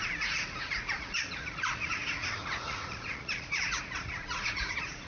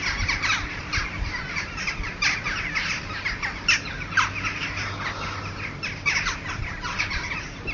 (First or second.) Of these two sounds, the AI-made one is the first